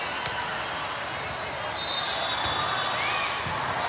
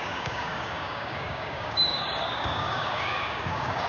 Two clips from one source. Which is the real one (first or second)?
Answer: first